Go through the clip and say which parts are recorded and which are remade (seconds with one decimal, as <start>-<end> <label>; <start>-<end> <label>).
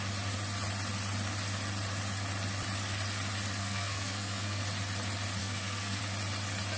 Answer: 0.0-3.6 recorded; 3.6-4.6 remade; 4.6-5.4 recorded; 5.4-6.0 remade; 6.0-6.8 recorded